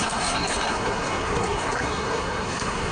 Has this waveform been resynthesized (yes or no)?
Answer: yes